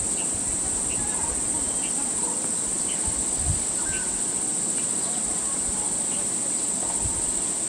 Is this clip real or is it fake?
real